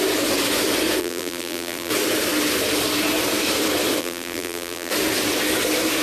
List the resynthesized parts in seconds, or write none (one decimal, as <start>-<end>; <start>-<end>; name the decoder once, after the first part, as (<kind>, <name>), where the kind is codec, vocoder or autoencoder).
1.0-1.9 (vocoder, BigVGAN v2); 4.0-4.9